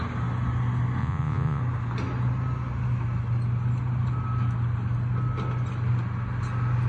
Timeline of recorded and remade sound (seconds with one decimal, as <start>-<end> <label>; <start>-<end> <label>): 0.0-1.0 recorded; 1.0-1.6 remade; 1.6-6.9 recorded